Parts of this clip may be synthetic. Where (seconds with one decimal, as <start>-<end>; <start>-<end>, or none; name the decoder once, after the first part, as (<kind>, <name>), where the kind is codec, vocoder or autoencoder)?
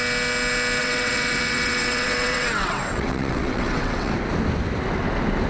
0.8-4.1 (vocoder, WaveNeXt)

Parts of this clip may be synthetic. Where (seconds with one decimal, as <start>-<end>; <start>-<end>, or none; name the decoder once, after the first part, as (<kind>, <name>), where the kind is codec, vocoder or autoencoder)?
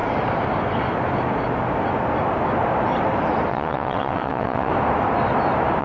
3.5-4.7 (vocoder, WaveNeXt)